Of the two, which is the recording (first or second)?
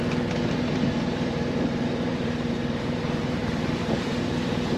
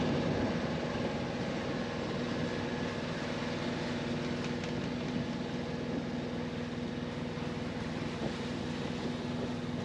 second